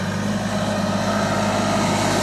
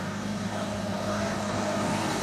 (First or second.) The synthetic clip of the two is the second